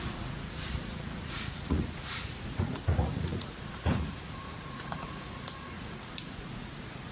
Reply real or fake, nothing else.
fake